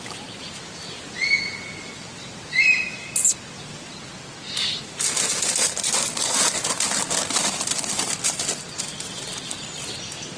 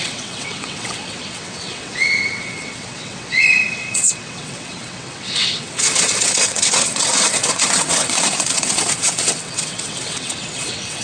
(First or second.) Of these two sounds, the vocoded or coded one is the second